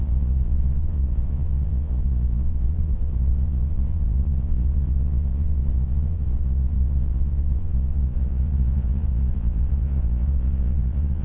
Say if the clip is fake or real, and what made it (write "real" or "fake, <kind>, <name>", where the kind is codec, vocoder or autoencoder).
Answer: fake, vocoder, Vocos